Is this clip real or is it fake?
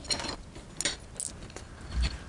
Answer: real